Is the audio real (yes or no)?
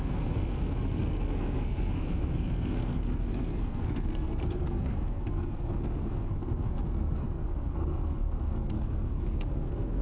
no